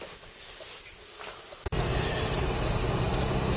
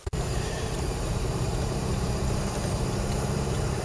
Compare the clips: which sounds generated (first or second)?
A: second